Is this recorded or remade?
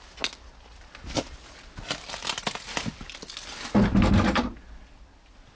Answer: recorded